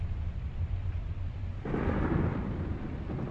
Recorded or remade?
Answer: remade